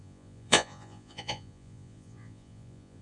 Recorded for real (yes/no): no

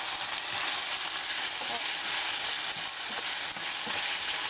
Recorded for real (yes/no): yes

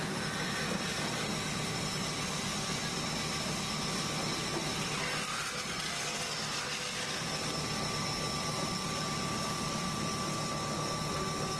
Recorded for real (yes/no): yes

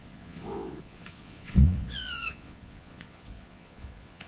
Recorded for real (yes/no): no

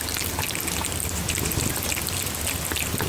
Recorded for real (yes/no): yes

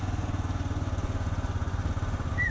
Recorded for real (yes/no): no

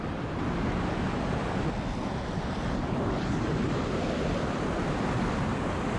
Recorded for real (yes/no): yes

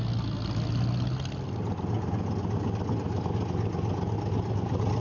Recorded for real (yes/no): yes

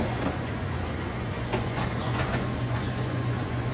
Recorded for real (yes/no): no